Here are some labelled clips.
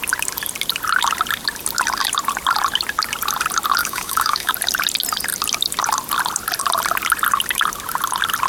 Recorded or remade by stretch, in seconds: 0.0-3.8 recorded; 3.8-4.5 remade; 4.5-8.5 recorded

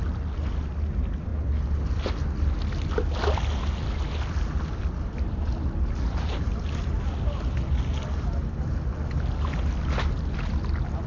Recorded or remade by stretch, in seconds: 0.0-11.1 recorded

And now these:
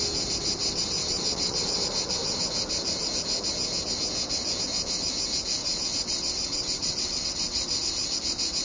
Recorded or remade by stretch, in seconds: 0.0-1.0 recorded; 1.0-1.8 remade; 1.8-5.6 recorded; 5.6-7.8 remade; 7.8-8.6 recorded